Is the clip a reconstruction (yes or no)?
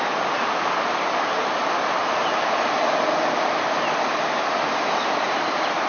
yes